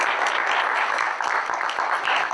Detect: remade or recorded recorded